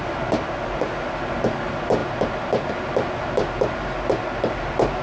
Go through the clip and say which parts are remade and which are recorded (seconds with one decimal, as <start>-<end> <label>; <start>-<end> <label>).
0.0-5.0 recorded